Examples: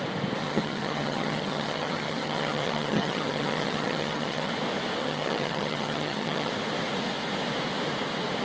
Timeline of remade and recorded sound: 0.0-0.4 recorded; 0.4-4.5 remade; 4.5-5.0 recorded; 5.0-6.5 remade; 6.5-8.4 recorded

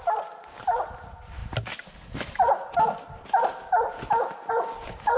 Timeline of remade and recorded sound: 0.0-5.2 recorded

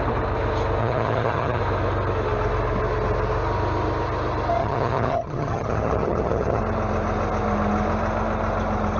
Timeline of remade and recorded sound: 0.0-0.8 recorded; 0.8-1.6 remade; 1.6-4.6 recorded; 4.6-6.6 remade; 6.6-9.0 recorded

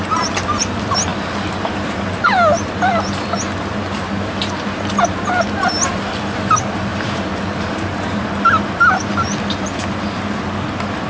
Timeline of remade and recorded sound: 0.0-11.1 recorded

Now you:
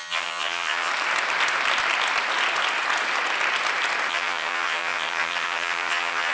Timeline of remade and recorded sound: 0.0-0.9 remade; 0.9-4.1 recorded; 4.1-6.3 remade

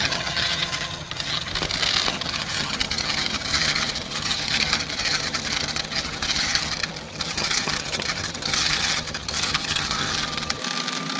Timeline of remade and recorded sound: 0.0-1.5 remade; 1.5-2.1 recorded; 2.1-10.6 remade; 10.6-11.2 recorded